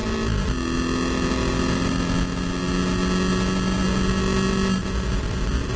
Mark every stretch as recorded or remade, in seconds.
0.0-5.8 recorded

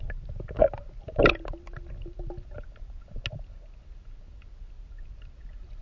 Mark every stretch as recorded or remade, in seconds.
0.0-5.8 recorded

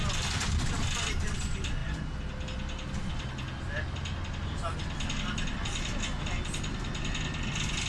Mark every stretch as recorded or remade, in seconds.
0.0-7.9 recorded

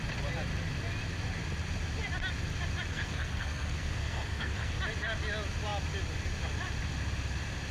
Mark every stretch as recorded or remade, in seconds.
0.0-2.9 recorded; 2.9-4.8 remade; 4.8-7.7 recorded

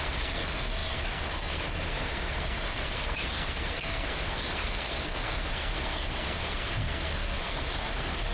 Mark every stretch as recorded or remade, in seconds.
0.0-8.3 remade

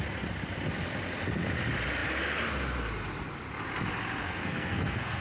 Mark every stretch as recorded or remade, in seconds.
0.0-4.2 recorded; 4.2-5.2 remade

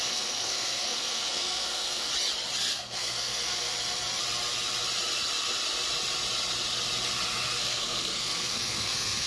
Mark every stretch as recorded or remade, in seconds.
0.0-2.1 remade; 2.1-2.7 recorded; 2.7-3.7 remade; 3.7-7.6 recorded; 7.6-9.3 remade

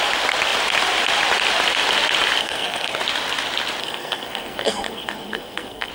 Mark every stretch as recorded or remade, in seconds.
0.0-2.4 recorded; 2.4-3.0 remade; 3.0-3.8 recorded; 3.8-5.9 remade